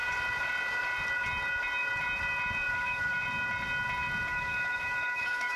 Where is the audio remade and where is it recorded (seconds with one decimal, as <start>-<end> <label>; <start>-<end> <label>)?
0.0-2.7 recorded; 2.7-3.1 remade; 3.1-4.3 recorded; 4.3-5.6 remade